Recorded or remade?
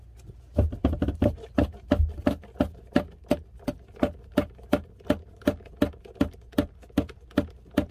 recorded